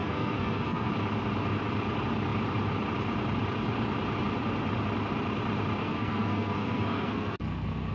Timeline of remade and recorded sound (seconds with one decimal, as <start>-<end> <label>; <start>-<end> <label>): 0.0-0.9 remade; 0.9-5.8 recorded; 5.8-7.9 remade